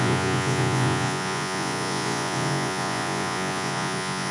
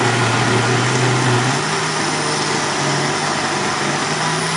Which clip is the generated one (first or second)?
first